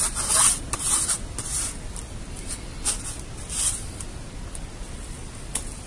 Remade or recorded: recorded